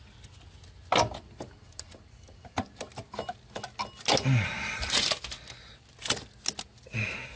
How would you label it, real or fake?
real